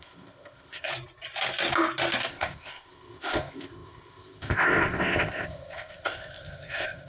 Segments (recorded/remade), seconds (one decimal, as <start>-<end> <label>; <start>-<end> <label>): 0.0-0.9 remade; 0.9-2.3 recorded; 2.3-7.1 remade